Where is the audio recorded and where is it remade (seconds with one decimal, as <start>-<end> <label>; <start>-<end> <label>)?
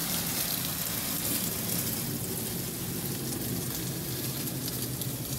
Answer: 0.0-4.6 recorded; 4.6-5.4 remade